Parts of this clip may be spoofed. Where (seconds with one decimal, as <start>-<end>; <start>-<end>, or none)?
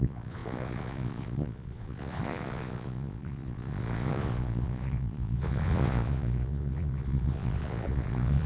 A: 0.0-8.5